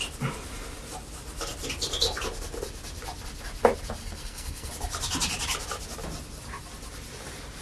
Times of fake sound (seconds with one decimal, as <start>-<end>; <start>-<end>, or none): 4.0-4.7